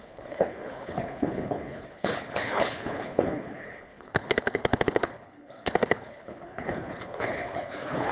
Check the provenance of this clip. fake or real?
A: fake